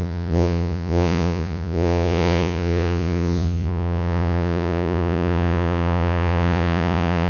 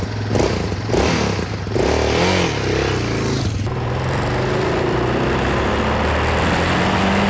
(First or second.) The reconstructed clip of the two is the first